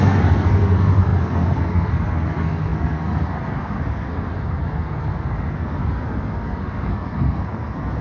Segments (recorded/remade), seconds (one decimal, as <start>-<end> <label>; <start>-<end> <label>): 0.0-8.0 remade